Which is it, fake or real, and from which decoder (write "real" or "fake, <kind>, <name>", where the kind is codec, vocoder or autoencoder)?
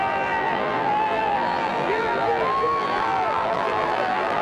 fake, vocoder, BigVGAN v2